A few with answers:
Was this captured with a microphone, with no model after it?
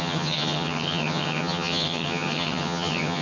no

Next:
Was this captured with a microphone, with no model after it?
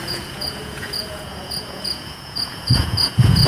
no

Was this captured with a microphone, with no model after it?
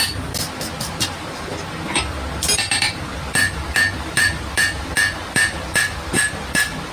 yes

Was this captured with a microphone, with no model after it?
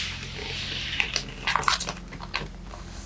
yes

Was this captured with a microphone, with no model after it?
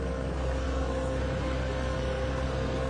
no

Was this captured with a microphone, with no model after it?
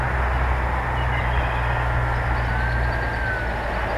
yes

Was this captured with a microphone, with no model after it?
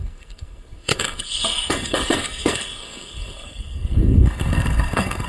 no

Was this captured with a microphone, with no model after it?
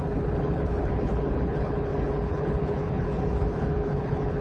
no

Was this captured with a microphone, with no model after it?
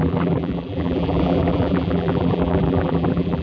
no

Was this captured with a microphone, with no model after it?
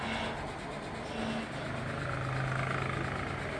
yes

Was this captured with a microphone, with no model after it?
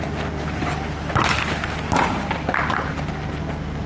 yes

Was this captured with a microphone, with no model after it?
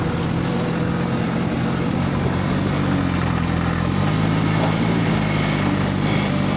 yes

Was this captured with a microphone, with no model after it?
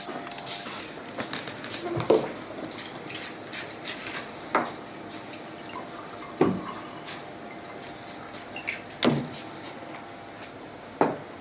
yes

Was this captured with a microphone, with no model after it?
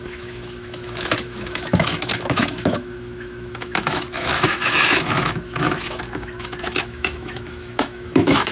no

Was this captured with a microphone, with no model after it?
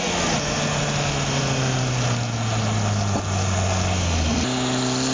yes